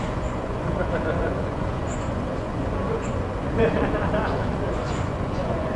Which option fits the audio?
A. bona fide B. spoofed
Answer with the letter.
B